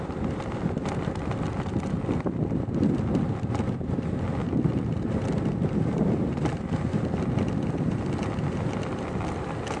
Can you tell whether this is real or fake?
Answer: real